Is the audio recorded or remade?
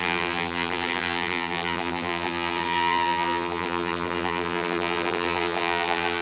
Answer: remade